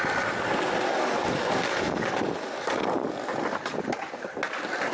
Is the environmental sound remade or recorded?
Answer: recorded